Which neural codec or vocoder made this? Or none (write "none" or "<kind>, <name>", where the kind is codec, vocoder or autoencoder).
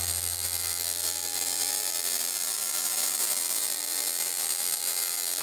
vocoder, BigVGAN v2